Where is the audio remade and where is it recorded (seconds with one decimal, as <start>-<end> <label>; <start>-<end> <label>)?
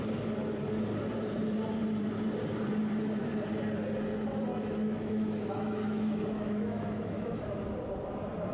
0.0-4.5 recorded; 4.5-7.6 remade; 7.6-8.5 recorded